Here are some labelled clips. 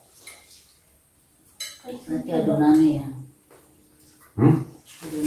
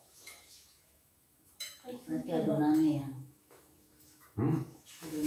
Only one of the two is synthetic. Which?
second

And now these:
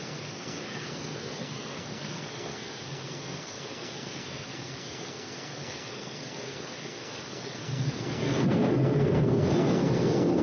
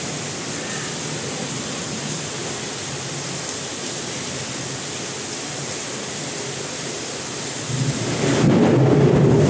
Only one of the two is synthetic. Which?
first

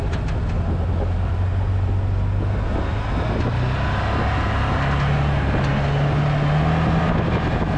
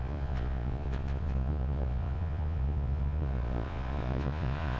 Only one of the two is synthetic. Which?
second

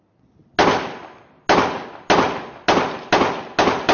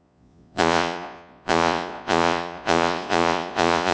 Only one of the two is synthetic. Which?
second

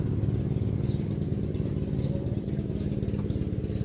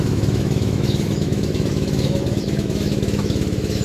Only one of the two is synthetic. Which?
second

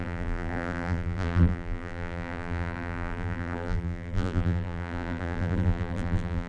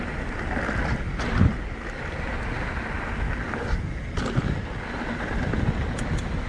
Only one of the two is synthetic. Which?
first